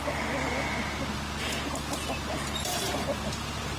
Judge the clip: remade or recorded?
recorded